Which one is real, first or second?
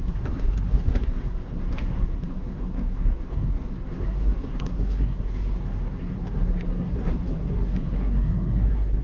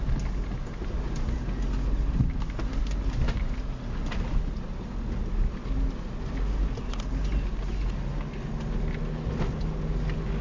second